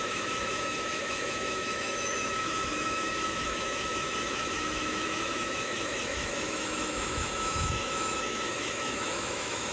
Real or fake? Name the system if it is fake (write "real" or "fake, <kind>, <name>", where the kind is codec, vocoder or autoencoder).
fake, autoencoder, DAC-VAE